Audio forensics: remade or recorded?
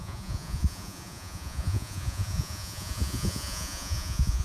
remade